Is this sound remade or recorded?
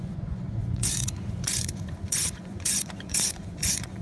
remade